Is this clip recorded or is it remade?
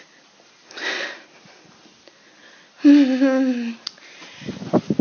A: recorded